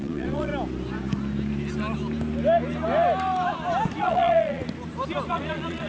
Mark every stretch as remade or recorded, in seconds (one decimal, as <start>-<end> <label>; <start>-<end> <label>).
0.0-0.5 remade; 0.5-4.0 recorded; 4.0-4.6 remade; 4.6-5.3 recorded; 5.3-5.9 remade